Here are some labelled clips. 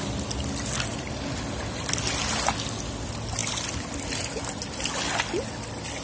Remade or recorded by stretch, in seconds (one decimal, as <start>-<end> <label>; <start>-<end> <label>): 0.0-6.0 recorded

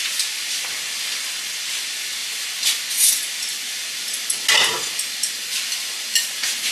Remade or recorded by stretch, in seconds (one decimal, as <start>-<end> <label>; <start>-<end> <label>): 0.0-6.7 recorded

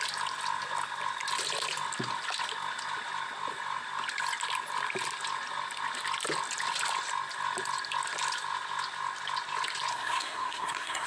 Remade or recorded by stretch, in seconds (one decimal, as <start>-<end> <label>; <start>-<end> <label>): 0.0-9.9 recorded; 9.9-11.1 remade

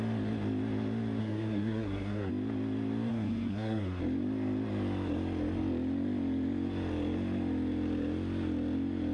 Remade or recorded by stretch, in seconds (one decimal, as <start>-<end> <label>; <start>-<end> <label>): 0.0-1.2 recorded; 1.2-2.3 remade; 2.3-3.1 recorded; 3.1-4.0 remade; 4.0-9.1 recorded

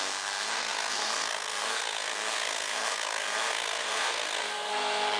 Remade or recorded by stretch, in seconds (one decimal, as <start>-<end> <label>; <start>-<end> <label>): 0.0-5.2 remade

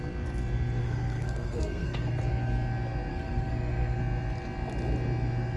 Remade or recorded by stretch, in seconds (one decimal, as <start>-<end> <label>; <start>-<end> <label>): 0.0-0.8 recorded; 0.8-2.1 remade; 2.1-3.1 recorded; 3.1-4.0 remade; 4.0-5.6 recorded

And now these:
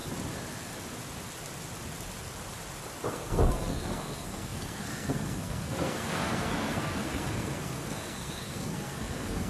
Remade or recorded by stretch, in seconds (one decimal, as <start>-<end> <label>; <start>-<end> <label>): 0.0-3.1 recorded; 3.1-9.5 remade

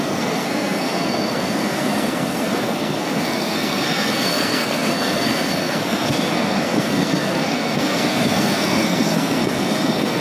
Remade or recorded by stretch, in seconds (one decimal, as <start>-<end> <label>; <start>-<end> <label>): 0.0-10.2 remade